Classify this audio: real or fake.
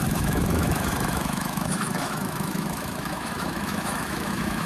fake